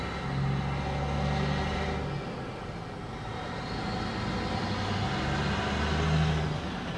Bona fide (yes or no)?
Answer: yes